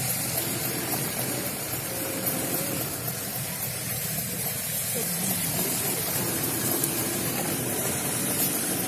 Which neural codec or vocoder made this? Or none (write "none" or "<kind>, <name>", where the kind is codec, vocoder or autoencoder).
vocoder, BigVGAN v2